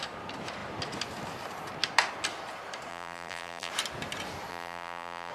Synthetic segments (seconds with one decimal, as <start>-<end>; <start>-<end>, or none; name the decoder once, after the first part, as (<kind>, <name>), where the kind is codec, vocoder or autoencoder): 2.9-3.7 (vocoder, BigVGAN v2); 4.5-5.3

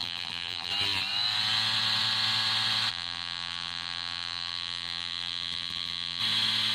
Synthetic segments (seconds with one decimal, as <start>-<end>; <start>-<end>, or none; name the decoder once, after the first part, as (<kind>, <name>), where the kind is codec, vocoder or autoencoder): 0.0-0.7 (vocoder, BigVGAN v2); 2.9-6.2